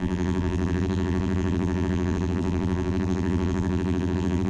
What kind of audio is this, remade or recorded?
remade